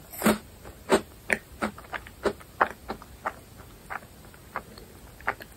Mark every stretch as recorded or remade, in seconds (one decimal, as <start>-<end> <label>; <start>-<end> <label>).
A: 0.0-0.9 recorded; 0.9-1.7 remade; 1.7-5.6 recorded